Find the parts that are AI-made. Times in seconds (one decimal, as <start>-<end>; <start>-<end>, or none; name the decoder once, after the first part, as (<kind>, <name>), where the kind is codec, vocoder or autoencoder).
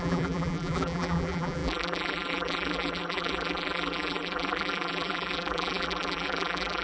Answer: 0.0-6.8 (vocoder, BigVGAN v2)